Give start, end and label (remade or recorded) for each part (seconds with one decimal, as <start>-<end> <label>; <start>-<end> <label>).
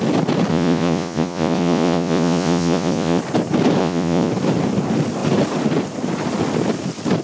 0.0-0.5 recorded; 0.5-3.2 remade; 3.2-3.8 recorded; 3.8-4.3 remade; 4.3-7.2 recorded